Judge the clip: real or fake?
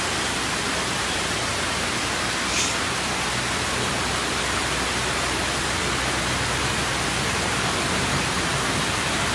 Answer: real